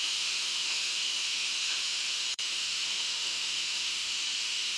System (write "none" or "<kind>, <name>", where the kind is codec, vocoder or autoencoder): autoencoder, DAC-VAE